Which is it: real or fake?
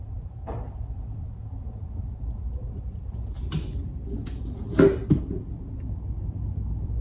real